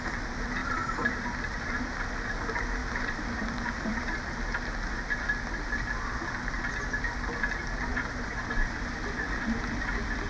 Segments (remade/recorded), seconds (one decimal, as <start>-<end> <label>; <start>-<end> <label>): 0.0-0.6 recorded; 0.6-1.1 remade; 1.1-2.8 recorded; 2.8-4.1 remade; 4.1-7.9 recorded; 7.9-8.4 remade; 8.4-10.3 recorded